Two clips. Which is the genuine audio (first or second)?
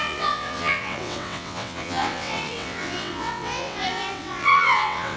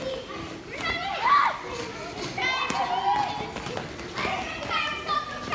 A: second